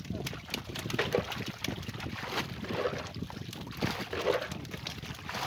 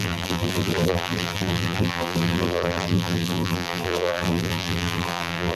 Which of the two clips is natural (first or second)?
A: first